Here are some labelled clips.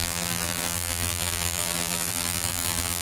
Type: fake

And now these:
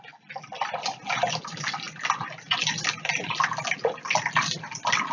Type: real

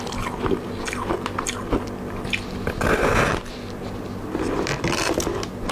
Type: real